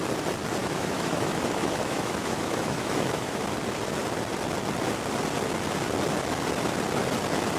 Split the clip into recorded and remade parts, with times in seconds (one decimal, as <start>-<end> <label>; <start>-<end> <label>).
0.0-0.6 recorded; 0.6-3.4 remade; 3.4-7.6 recorded